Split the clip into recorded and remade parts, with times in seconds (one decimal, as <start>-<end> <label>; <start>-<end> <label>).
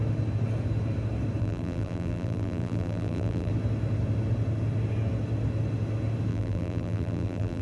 0.0-1.4 recorded; 1.4-3.5 remade; 3.5-6.3 recorded; 6.3-7.6 remade